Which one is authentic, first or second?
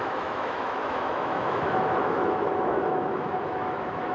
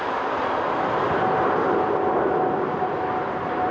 second